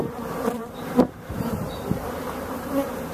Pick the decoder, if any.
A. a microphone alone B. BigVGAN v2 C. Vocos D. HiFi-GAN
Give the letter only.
B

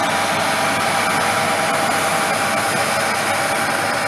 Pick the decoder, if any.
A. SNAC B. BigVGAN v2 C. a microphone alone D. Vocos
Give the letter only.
C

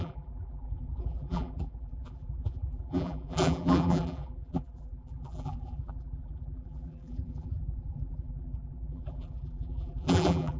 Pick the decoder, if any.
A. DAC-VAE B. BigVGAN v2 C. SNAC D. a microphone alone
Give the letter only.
B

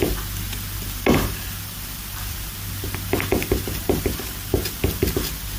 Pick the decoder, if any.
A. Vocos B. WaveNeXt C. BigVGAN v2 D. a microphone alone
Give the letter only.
C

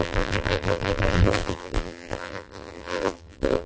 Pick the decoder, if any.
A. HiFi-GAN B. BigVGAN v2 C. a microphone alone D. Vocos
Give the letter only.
B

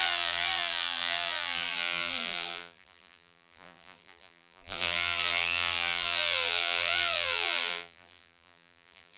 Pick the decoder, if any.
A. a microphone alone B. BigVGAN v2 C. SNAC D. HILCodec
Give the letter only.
B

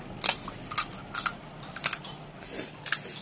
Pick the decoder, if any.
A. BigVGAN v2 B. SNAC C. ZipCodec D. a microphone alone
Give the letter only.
D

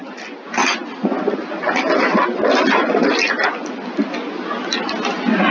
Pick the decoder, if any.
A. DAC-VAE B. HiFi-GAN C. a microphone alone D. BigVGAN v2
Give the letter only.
C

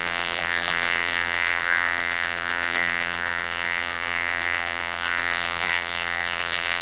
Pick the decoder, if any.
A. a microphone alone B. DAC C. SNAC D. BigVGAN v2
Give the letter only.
D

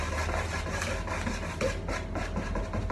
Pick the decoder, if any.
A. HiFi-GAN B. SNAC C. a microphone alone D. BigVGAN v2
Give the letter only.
C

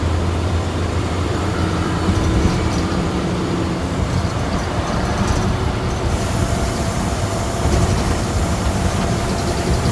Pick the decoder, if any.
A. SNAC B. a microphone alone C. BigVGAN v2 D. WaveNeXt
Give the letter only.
C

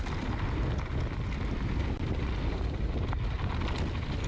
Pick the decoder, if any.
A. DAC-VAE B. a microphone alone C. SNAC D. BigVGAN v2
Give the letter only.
B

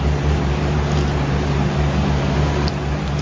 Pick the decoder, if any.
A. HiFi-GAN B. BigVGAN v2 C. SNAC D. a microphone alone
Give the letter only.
B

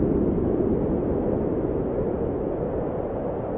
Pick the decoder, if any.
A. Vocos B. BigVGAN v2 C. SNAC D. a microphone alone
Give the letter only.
D